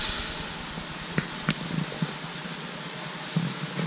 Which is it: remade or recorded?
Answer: recorded